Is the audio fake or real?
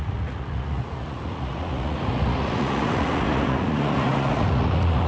fake